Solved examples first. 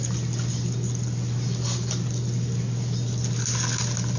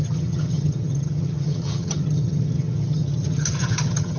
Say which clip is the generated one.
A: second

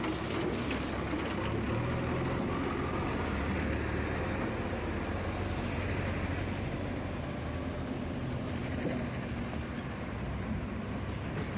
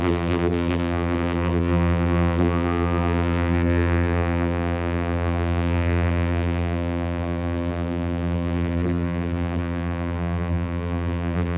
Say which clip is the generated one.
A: second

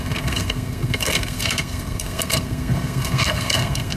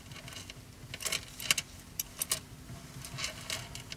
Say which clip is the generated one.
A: first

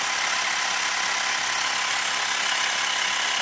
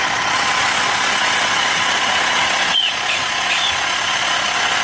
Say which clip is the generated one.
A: second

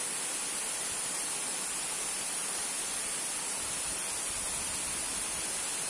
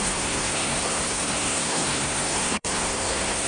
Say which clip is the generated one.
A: second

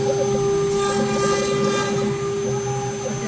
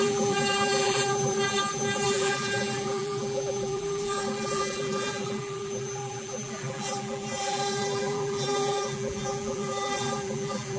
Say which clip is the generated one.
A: second